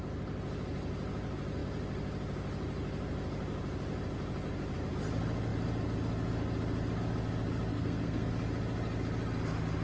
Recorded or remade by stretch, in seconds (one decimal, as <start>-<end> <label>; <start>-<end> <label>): 0.0-7.7 recorded; 7.7-8.3 remade; 8.3-9.8 recorded